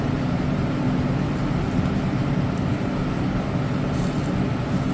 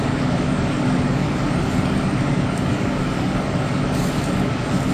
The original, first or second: first